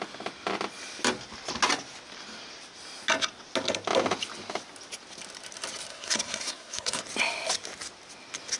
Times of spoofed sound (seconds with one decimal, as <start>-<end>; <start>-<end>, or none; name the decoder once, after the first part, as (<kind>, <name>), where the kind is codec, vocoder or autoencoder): 5.9-7.0 (codec, SNAC)